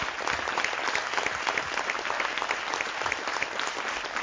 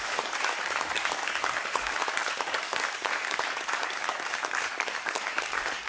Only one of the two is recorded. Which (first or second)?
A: first